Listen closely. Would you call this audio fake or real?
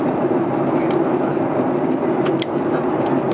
real